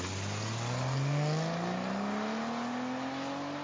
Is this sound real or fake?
real